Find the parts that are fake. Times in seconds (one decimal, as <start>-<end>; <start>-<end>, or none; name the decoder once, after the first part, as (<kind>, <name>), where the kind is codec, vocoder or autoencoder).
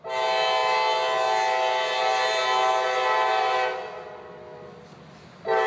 none